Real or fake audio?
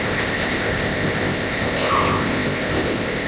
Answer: fake